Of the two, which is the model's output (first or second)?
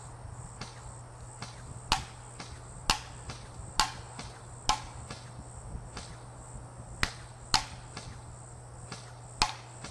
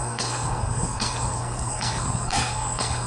second